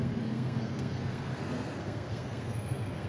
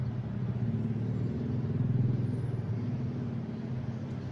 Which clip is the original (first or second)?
second